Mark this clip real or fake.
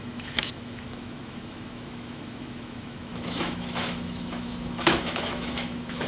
fake